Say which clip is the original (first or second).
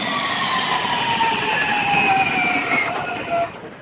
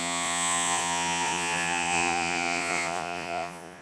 first